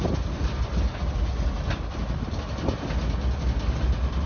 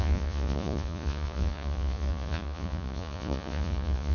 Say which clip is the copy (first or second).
second